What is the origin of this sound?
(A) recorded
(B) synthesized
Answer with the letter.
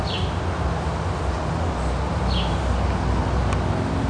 A